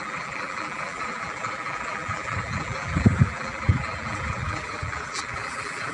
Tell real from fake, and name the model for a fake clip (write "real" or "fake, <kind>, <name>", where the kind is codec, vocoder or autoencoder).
fake, vocoder, BigVGAN v2